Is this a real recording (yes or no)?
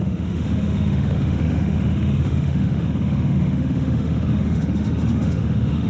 no